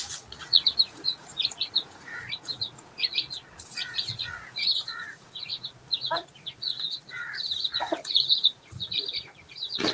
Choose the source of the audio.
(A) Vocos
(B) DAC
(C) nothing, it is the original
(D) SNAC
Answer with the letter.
A